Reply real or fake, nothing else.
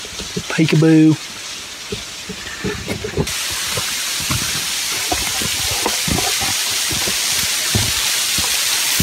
real